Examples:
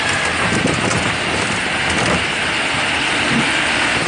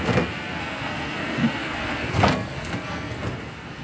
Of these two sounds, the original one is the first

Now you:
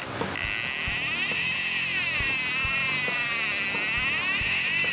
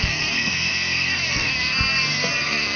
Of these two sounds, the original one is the first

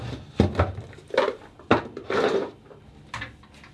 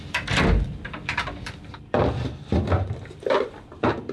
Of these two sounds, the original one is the first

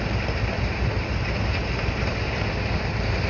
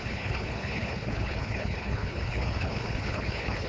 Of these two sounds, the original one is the first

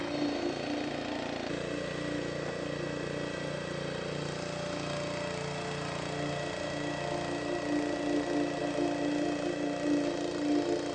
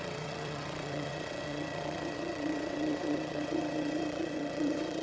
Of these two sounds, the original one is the first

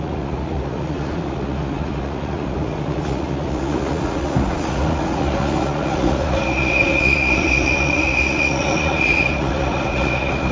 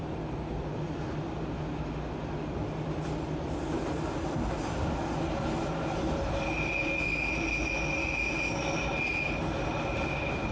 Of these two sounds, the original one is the second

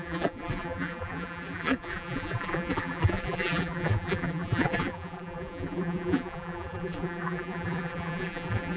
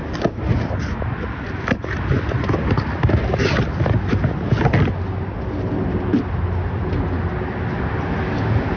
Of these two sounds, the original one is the second